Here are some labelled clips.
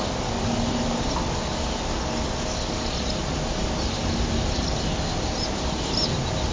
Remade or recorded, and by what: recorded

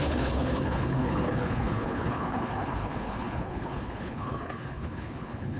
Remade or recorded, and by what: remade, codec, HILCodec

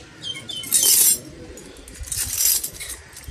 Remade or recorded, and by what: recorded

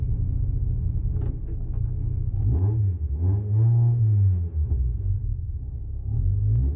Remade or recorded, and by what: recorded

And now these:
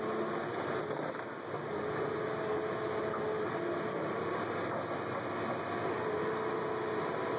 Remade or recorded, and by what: recorded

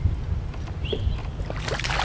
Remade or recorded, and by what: recorded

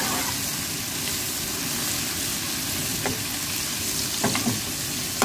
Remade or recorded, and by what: recorded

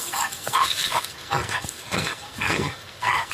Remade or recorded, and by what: remade, codec, SNAC